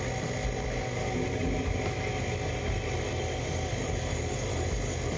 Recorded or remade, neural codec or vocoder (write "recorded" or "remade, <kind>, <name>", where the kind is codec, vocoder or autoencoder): recorded